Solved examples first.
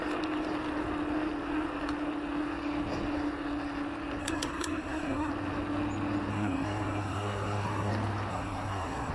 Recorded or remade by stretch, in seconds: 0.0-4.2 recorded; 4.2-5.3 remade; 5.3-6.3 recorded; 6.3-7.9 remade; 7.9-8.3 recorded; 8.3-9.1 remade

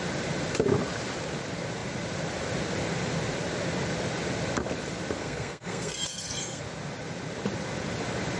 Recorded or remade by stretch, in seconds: 0.0-5.2 recorded; 5.2-6.6 remade; 6.6-8.4 recorded

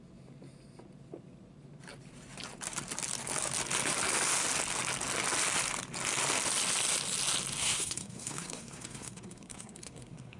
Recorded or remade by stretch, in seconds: 0.0-7.6 recorded; 7.6-10.4 remade

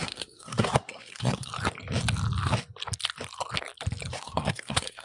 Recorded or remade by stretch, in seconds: 0.0-1.5 remade; 1.5-4.1 recorded; 4.1-5.0 remade

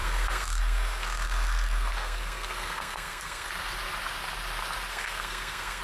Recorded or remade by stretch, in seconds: 0.0-3.5 remade; 3.5-4.9 recorded; 4.9-5.8 remade

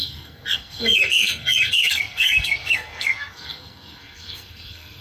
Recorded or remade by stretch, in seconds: 0.0-5.0 remade